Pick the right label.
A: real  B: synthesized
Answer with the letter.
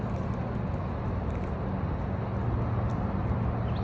A